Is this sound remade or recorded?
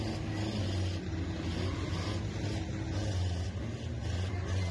recorded